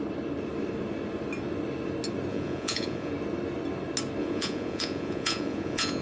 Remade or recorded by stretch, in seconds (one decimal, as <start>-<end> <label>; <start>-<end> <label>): 0.0-2.3 recorded; 2.3-3.1 remade; 3.1-4.2 recorded; 4.2-6.0 remade